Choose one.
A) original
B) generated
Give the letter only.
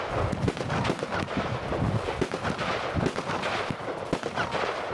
A